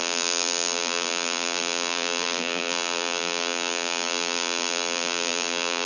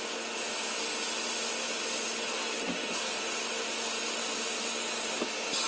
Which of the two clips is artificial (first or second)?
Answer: first